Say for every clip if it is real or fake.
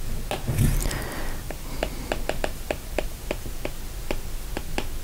real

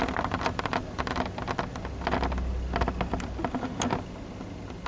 real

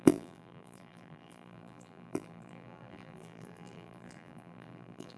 fake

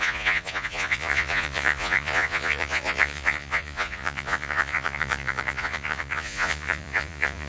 fake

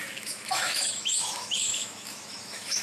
fake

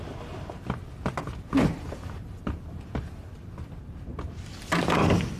real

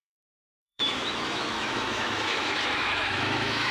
fake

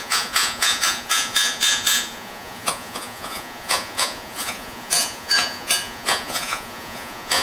fake